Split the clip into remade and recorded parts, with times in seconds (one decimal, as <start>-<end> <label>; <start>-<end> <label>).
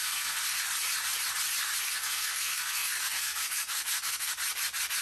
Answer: 0.0-0.4 remade; 0.4-1.9 recorded; 1.9-4.3 remade; 4.3-5.0 recorded